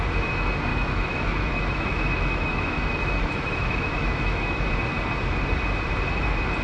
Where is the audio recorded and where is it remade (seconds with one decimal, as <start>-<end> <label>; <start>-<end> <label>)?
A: 0.0-0.7 recorded; 0.7-4.7 remade; 4.7-6.6 recorded